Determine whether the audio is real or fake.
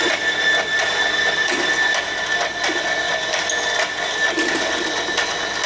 real